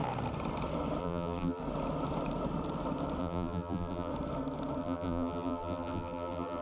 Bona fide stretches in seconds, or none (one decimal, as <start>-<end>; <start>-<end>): 0.0-1.0; 1.6-3.2; 4.1-4.8